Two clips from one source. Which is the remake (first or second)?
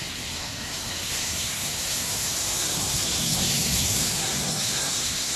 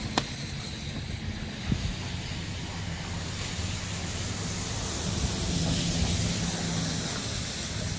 first